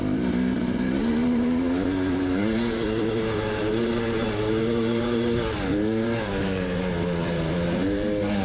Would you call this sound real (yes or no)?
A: no